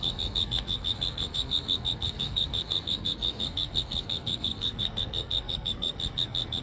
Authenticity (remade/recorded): remade